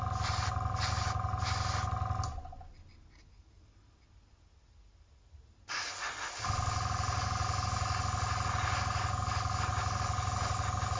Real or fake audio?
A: real